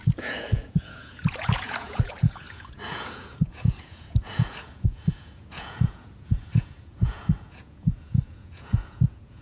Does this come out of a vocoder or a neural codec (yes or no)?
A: yes